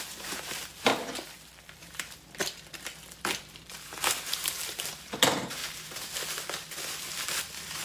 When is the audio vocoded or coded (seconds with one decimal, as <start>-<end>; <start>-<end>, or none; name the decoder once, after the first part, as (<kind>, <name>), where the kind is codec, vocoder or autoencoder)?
0.0-0.9 (vocoder, BigVGAN v2); 1.8-2.4; 3.4-5.6

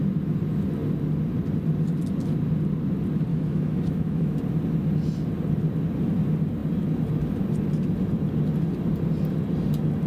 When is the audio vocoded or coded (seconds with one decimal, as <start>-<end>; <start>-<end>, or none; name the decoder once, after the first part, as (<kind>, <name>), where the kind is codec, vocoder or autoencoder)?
3.3-4.4 (autoencoder, DAC-VAE)

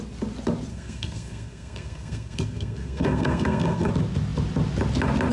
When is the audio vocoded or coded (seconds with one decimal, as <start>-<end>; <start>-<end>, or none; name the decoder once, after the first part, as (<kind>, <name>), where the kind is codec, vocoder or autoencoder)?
0.7-3.9 (codec, SNAC)

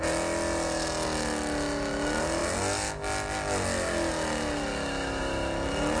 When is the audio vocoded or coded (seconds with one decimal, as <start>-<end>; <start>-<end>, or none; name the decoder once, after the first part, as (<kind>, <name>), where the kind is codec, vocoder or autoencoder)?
none

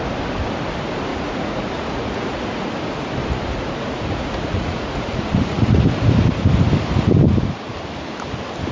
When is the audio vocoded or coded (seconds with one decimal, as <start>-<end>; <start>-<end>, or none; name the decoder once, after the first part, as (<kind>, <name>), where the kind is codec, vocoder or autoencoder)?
1.1-2.7 (vocoder, Vocos); 3.5-5.8

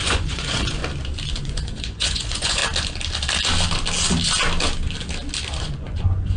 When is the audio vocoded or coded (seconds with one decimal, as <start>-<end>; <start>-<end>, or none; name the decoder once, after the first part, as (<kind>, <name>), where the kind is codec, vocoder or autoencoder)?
0.0-0.8 (vocoder, Vocos); 1.4-2.6; 5.6-6.4

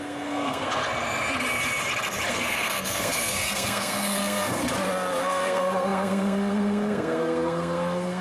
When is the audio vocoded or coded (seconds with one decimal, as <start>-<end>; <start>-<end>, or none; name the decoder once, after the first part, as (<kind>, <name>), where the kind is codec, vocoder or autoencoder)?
0.0-0.8 (codec, SNAC); 2.3-4.6; 5.2-8.2

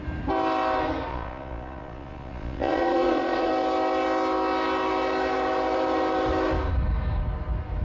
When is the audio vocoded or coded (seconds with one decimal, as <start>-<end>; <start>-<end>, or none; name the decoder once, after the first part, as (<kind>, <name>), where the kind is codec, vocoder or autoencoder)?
1.1-3.5 (vocoder, Vocos)